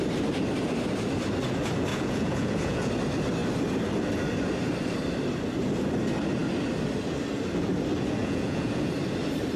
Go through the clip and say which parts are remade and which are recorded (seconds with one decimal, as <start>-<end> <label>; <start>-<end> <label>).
0.0-1.9 recorded; 1.9-2.9 remade; 2.9-8.2 recorded; 8.2-8.9 remade; 8.9-9.6 recorded